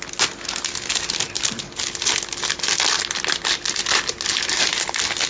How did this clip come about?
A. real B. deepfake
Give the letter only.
A